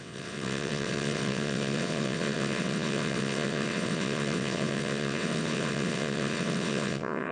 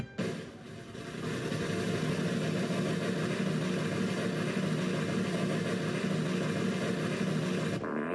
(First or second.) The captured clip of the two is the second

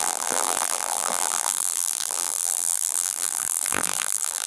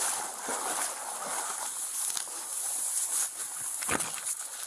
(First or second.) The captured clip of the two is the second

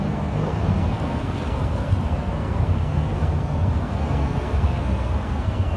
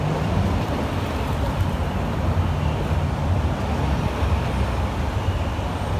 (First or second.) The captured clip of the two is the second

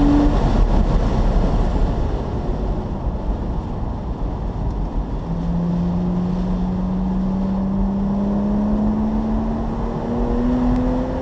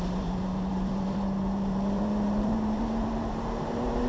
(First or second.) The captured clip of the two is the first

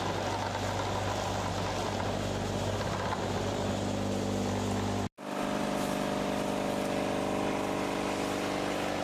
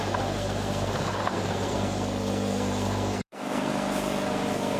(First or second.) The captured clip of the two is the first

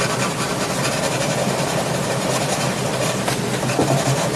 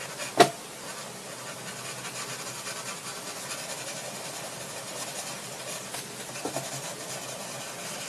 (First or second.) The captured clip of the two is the second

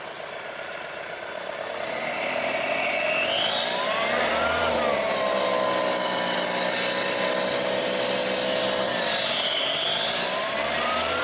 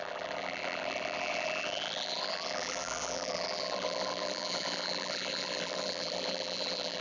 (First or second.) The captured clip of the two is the first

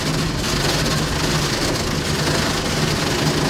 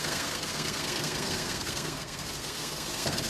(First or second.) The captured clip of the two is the first